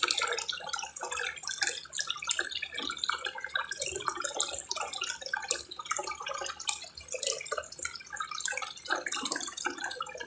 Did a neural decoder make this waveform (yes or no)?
no